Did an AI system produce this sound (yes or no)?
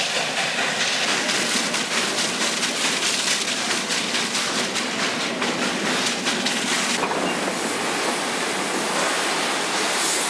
no